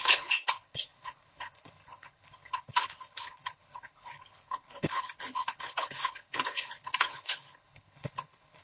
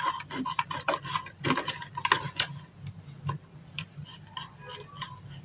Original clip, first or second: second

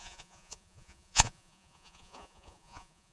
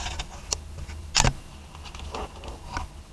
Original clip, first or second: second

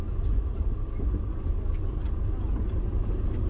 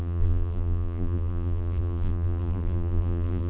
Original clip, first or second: first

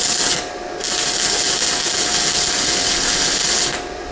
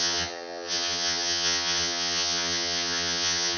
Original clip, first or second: first